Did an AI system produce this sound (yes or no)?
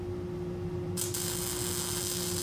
no